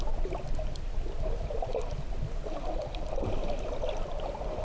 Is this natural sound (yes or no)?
yes